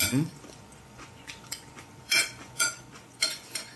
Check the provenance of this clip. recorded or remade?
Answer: remade